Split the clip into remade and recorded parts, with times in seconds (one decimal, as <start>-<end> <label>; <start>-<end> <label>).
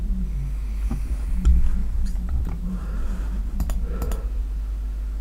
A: 0.0-1.8 recorded; 1.8-3.6 remade; 3.6-5.2 recorded